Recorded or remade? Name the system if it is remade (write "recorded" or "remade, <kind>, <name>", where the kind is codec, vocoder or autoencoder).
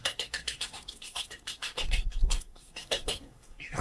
remade, codec, SNAC